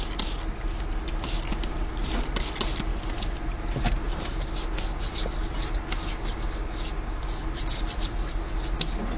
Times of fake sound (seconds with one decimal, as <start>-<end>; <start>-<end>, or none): none